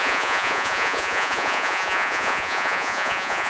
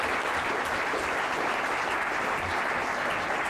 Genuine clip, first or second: second